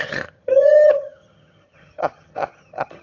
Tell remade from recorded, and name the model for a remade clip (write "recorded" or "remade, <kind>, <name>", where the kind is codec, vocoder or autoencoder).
remade, vocoder, HiFi-GAN